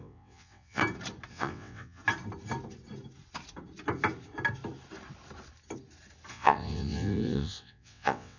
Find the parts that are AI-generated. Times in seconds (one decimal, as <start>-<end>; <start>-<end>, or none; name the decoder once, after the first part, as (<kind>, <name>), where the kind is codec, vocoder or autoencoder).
0.0-0.8 (vocoder, WaveNeXt); 1.3-2.0; 6.3-8.4